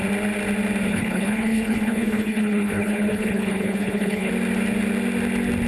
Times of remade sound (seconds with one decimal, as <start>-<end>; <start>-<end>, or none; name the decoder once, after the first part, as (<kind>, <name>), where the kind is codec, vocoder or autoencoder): 0.9-4.3 (codec, HILCodec)